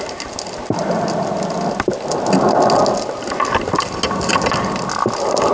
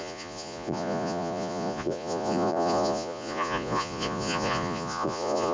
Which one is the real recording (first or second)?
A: first